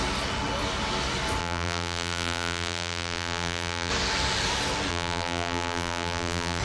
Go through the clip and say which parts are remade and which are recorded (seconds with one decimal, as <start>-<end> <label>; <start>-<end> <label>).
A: 0.0-1.4 recorded; 1.4-3.9 remade; 3.9-4.9 recorded; 4.9-6.6 remade